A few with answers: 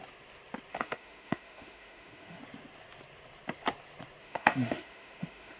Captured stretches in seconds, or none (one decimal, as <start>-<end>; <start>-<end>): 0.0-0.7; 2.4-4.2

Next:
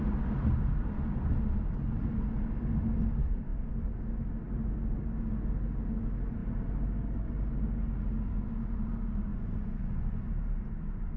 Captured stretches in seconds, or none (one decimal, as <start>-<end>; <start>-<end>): 0.0-9.3; 10.3-11.2

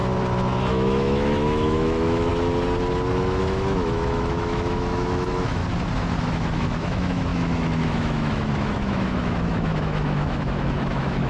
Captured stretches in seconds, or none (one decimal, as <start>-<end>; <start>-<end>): 0.0-0.7; 2.3-3.4; 5.6-6.2

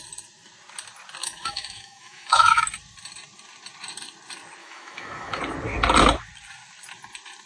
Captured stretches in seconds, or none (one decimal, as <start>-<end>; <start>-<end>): 0.0-1.2; 2.6-4.6; 5.4-7.5

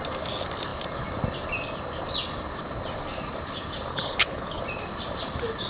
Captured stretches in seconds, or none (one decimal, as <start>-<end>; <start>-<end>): 0.0-3.9; 4.6-5.7

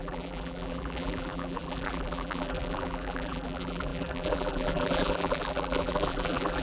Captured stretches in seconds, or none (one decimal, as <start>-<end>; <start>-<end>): none

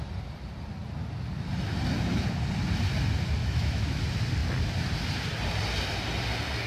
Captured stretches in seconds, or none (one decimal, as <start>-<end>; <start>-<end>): 0.0-3.4; 4.0-6.7